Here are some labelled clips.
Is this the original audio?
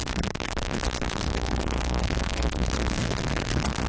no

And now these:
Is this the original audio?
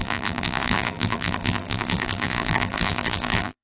no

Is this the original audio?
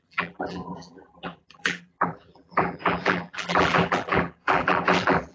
no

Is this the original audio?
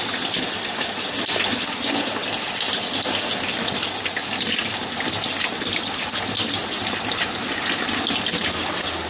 yes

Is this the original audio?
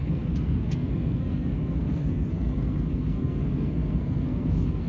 no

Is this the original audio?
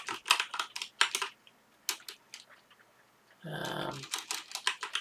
yes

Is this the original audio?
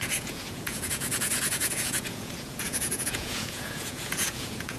no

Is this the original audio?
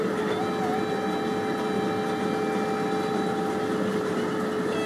yes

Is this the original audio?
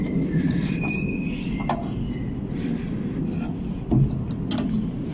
yes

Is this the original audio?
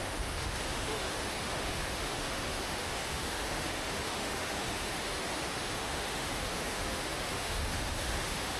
no